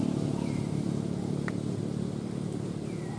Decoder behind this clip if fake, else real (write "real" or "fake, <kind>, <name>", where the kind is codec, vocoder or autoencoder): real